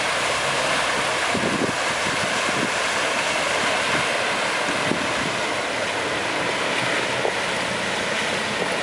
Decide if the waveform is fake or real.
real